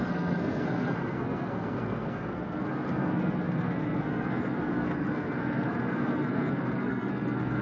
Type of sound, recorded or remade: remade